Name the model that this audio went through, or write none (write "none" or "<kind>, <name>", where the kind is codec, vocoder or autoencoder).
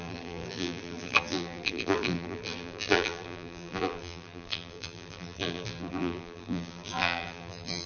vocoder, BigVGAN v2